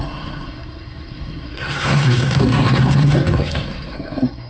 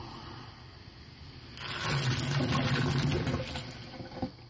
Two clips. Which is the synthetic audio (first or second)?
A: first